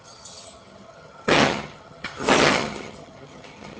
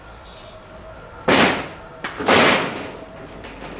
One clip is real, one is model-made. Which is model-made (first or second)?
first